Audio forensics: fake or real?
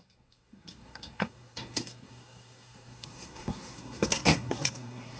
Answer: fake